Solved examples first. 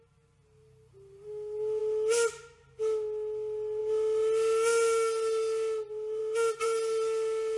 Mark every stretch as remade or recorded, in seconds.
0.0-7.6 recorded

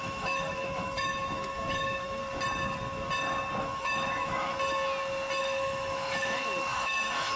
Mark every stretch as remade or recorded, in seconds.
0.0-2.2 remade; 2.2-3.6 recorded; 3.6-4.5 remade; 4.5-5.4 recorded; 5.4-7.4 remade

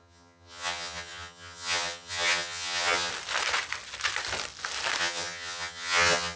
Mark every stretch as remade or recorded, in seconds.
0.0-3.1 remade; 3.1-5.0 recorded; 5.0-6.4 remade